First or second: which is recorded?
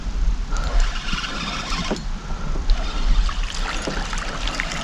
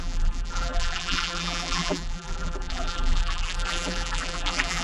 first